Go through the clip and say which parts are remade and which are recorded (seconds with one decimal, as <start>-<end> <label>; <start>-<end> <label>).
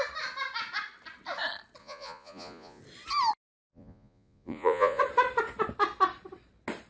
0.0-1.8 recorded; 1.8-2.8 remade; 2.8-3.7 recorded; 3.7-5.0 remade; 5.0-6.9 recorded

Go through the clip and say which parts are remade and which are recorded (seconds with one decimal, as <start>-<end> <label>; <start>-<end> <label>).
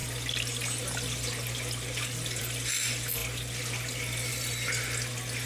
0.0-5.5 recorded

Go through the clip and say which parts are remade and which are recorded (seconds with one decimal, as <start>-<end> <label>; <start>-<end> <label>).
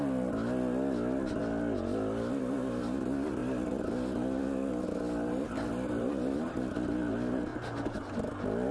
0.0-8.7 recorded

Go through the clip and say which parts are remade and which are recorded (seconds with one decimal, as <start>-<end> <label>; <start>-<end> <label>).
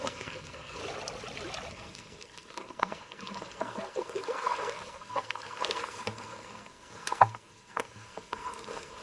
0.0-0.8 remade; 0.8-1.7 recorded; 1.7-9.0 remade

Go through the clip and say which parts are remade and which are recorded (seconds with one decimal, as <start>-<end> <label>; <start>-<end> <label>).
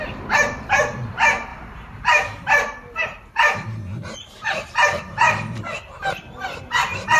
0.0-1.5 recorded; 1.5-5.6 remade; 5.6-7.2 recorded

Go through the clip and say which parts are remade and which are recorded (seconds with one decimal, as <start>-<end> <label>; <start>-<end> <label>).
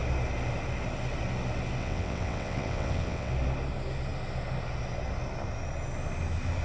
0.0-1.8 recorded; 1.8-3.3 remade; 3.3-6.6 recorded